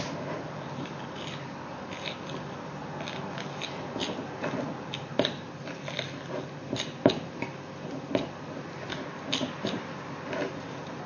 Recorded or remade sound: recorded